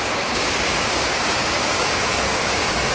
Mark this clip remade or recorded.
remade